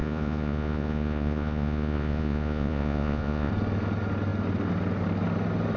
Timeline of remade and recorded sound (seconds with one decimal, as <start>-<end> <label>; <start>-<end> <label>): 0.0-3.5 remade; 3.5-5.8 recorded